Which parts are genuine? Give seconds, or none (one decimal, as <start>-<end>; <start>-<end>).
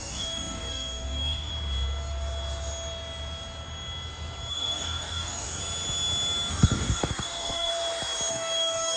1.5-4.5; 5.6-6.5; 7.7-8.3